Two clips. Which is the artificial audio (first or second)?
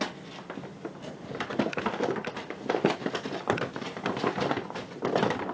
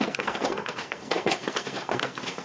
second